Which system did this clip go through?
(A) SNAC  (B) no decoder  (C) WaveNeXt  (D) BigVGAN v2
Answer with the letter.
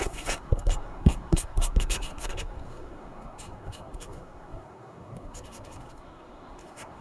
A